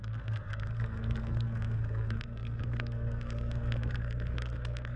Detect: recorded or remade remade